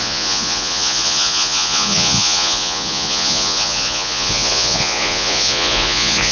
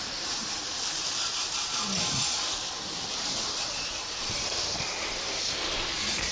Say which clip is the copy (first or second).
first